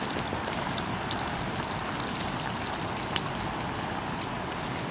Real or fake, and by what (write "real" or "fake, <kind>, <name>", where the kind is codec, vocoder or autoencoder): fake, vocoder, BigVGAN v2